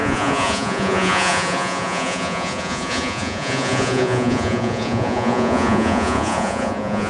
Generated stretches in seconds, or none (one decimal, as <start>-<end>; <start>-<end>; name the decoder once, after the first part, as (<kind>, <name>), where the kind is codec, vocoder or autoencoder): 0.0-7.1 (vocoder, Vocos)